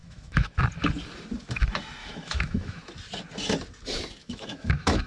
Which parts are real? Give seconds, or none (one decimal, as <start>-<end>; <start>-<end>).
0.6-2.0; 2.8-4.2